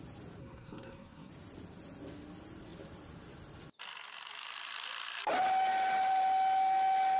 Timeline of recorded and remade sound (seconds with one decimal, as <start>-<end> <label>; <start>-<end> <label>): 0.0-0.4 recorded; 0.4-1.3 remade; 1.3-7.2 recorded

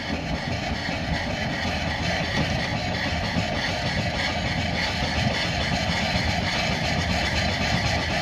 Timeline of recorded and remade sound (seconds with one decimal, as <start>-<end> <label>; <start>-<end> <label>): 0.0-8.2 recorded

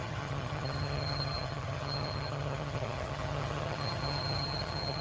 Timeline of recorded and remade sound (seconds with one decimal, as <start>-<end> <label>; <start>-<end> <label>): 0.0-5.0 remade

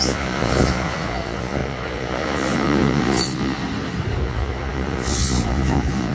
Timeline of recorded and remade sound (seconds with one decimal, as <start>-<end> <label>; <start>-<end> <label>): 0.0-3.6 remade; 3.6-4.2 recorded; 4.2-6.1 remade